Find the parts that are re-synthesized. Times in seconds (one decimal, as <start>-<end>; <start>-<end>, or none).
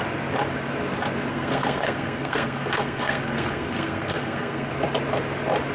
1.3-4.7